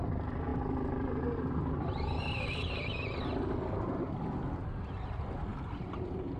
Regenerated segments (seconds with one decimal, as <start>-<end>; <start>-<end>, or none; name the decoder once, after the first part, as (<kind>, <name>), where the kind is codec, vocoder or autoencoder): none